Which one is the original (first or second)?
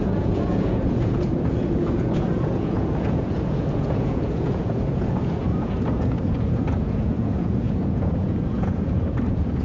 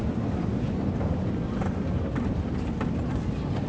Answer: second